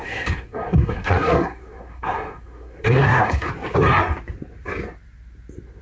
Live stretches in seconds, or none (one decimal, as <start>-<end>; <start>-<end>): 3.5-5.8